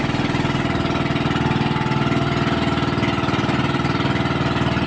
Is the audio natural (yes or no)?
yes